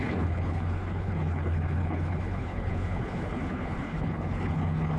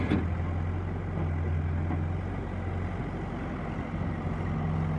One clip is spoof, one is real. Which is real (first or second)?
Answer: second